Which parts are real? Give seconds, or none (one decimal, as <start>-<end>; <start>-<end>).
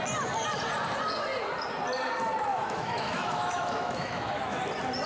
0.0-2.5; 4.6-5.1